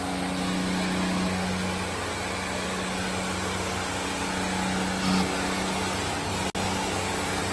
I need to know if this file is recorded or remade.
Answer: recorded